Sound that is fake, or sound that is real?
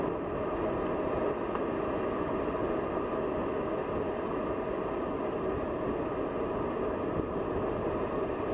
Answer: real